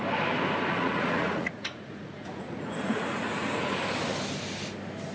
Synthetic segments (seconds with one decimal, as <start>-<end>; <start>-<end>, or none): 0.7-3.8